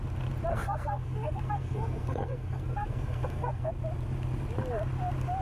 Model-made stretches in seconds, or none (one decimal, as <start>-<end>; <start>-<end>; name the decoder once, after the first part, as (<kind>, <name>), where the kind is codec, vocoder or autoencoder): 0.5-3.7 (codec, SNAC)

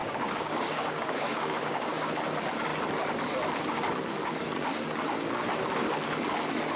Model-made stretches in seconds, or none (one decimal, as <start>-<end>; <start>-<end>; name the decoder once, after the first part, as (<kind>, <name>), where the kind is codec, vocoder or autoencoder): 0.0-2.1 (codec, DAC)